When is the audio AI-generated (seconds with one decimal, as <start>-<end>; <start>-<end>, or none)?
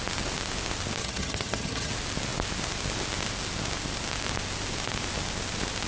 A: 1.0-1.9